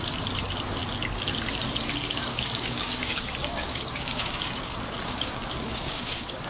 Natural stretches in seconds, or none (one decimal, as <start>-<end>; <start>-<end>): 0.0-2.3